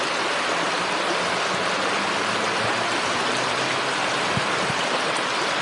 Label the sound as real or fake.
real